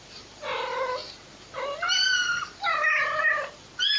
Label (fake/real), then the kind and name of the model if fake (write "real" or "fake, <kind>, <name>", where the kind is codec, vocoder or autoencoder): real